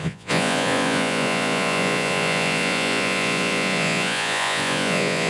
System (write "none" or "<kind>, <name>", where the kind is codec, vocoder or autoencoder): vocoder, Vocos